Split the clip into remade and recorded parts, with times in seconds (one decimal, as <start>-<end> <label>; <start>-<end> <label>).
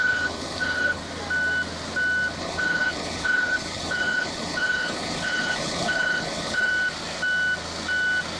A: 0.0-1.0 remade; 1.0-2.4 recorded; 2.4-6.7 remade; 6.7-8.4 recorded